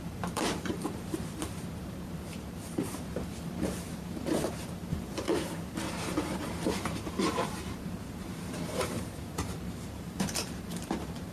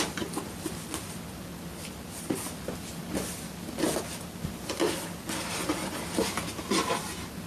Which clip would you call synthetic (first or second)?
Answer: first